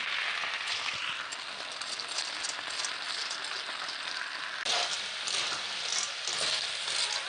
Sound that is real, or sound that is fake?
real